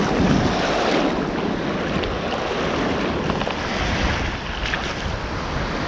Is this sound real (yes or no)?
yes